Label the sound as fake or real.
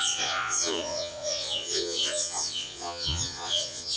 fake